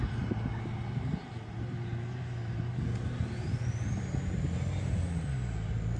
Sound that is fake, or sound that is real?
real